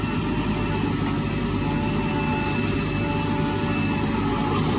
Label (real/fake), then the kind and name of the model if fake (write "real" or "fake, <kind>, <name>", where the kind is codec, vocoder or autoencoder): real